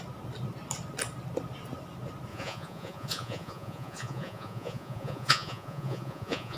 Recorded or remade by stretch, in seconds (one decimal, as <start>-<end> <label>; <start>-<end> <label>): 0.0-2.3 recorded; 2.3-6.6 remade